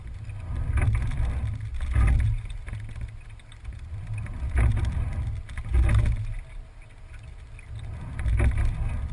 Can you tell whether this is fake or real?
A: real